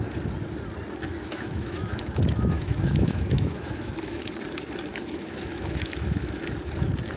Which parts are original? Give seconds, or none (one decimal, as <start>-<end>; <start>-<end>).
0.0-1.2; 4.3-4.9; 6.4-7.2